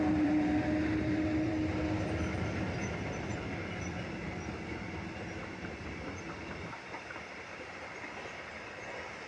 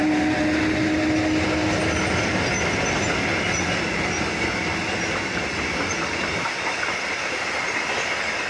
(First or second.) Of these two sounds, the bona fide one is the second